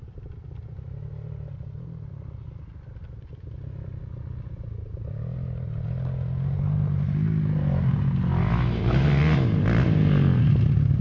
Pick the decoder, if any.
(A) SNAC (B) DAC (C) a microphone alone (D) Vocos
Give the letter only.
C